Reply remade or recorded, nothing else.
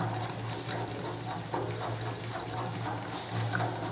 recorded